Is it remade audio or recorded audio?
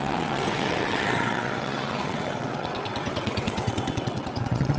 remade